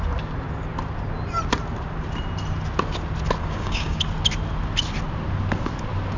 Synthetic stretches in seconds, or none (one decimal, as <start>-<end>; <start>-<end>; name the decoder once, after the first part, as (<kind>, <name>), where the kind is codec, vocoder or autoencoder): 3.4-4.0 (codec, DAC)